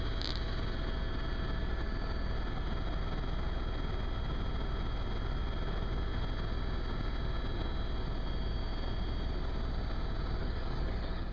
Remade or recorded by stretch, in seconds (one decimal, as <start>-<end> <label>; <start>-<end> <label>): 0.0-10.4 recorded; 10.4-11.3 remade